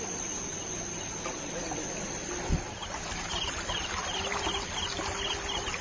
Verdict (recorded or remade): recorded